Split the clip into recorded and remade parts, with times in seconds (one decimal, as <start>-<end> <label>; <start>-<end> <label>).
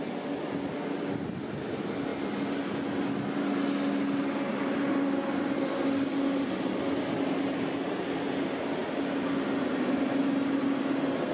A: 0.0-11.3 recorded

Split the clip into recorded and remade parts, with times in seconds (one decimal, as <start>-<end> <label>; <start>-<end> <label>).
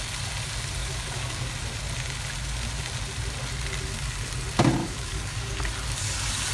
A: 0.0-0.8 recorded; 0.8-1.5 remade; 1.5-4.8 recorded; 4.8-5.6 remade; 5.6-6.5 recorded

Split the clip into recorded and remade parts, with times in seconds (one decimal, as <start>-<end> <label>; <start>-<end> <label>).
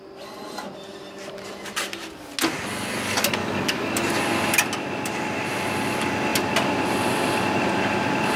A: 0.0-3.4 recorded; 3.4-3.9 remade; 3.9-8.4 recorded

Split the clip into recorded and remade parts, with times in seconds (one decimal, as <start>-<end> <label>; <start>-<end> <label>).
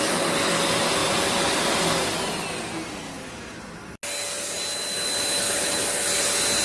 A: 0.0-6.6 recorded